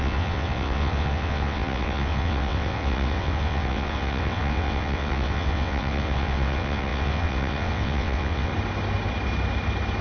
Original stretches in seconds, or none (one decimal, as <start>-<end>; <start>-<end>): 8.5-10.0